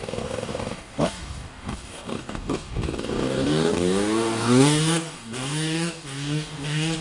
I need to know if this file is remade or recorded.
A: remade